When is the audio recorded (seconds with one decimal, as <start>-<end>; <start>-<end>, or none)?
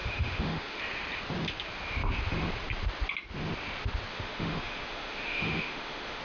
0.8-4.1